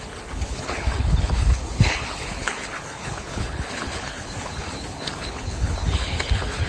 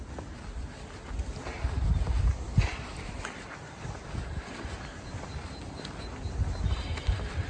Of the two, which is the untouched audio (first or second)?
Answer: second